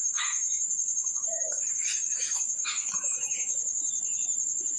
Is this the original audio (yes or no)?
no